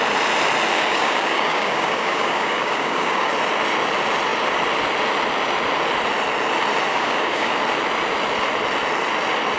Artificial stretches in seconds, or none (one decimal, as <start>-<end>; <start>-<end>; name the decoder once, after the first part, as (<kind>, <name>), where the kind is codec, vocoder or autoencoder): 0.7-3.3 (codec, DAC); 6.9-7.6